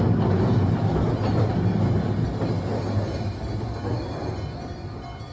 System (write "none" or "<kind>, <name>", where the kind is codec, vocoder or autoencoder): none